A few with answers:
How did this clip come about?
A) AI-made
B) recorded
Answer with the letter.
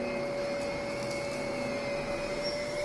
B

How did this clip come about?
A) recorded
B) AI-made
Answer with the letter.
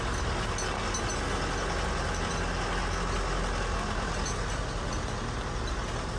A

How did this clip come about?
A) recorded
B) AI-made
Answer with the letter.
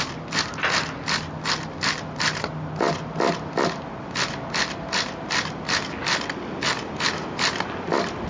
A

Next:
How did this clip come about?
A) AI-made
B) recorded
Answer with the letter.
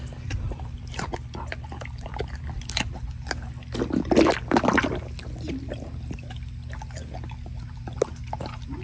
B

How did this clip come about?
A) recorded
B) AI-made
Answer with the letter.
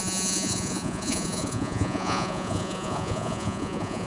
B